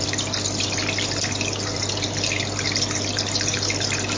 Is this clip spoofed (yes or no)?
no